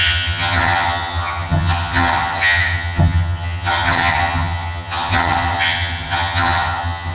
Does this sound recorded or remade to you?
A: remade